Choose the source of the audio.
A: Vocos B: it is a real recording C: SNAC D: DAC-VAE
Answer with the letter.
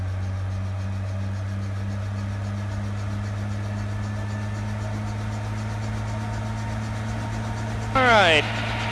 B